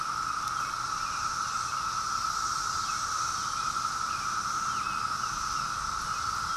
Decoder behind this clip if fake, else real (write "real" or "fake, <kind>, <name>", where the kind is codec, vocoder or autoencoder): real